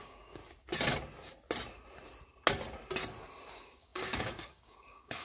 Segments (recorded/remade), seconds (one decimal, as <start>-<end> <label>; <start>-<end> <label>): 0.0-0.4 remade; 0.4-3.5 recorded; 3.5-5.2 remade